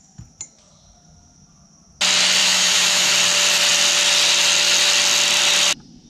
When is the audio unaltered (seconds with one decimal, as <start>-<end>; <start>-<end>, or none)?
0.0-2.4; 3.1-6.1